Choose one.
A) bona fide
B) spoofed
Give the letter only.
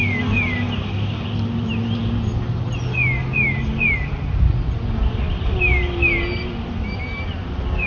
A